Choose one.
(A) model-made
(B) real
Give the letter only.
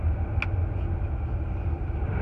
B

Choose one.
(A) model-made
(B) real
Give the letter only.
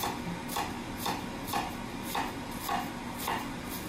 B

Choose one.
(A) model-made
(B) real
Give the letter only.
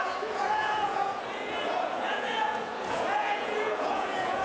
A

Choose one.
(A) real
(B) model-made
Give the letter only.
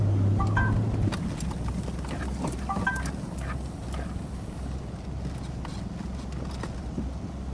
A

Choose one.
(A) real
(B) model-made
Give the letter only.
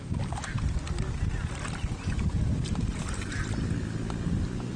A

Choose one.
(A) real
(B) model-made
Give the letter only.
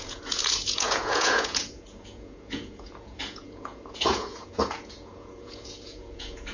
B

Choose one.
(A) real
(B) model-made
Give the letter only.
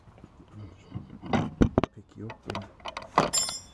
A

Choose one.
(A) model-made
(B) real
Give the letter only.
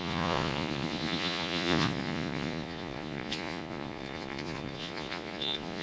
A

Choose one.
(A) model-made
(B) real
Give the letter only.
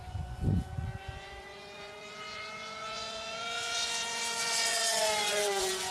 A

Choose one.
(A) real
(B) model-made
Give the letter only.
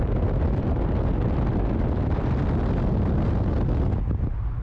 A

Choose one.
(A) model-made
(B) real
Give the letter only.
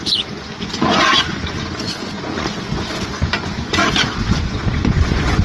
A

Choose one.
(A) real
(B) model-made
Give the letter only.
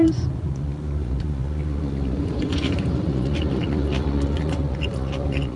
B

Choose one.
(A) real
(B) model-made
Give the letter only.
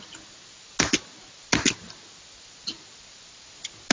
A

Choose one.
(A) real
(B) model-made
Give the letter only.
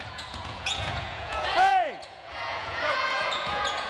B